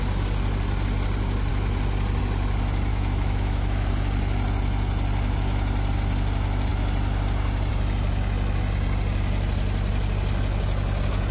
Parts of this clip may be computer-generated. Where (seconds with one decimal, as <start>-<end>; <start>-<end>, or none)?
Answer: 2.9-3.9